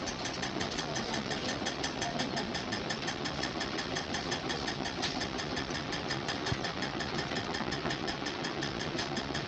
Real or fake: fake